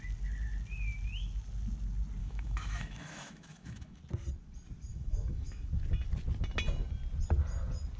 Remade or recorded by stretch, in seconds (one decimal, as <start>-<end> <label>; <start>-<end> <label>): 0.0-2.2 recorded; 2.2-4.0 remade; 4.0-4.9 recorded; 4.9-5.7 remade; 5.7-8.0 recorded